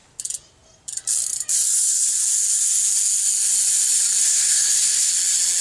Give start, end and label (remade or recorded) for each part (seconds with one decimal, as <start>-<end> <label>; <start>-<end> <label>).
0.0-4.2 recorded; 4.2-5.1 remade; 5.1-5.6 recorded